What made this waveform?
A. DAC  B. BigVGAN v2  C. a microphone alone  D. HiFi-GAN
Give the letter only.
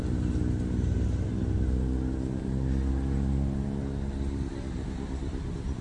C